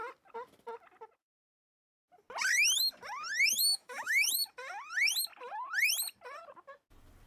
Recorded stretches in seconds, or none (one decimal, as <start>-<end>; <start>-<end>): 0.0-3.7; 4.3-7.3